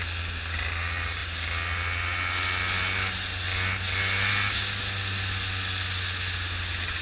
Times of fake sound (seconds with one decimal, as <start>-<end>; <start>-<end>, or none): none